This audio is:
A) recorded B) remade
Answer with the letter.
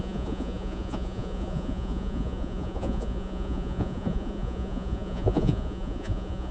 B